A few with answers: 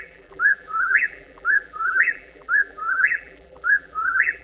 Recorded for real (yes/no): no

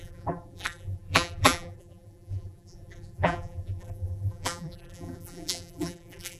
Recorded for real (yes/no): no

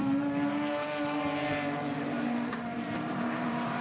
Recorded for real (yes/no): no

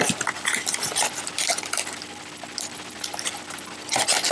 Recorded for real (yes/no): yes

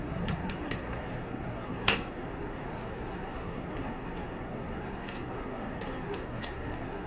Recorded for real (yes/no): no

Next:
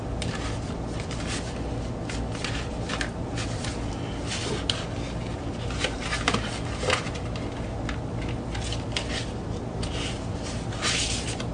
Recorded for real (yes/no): yes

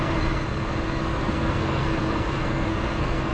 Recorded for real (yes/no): no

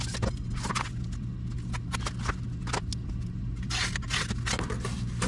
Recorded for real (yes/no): yes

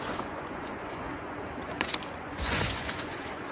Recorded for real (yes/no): no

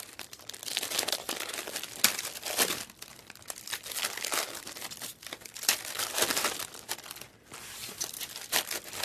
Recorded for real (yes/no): no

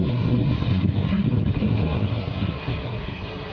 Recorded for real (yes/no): no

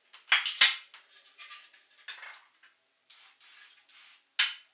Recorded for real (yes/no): yes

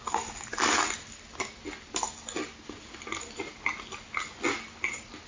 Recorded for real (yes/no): yes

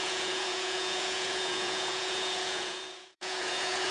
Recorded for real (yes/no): no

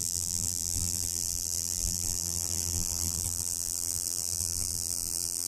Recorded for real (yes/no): no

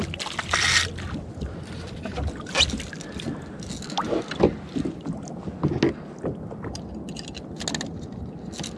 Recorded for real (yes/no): yes